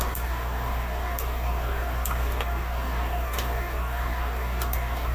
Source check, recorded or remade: remade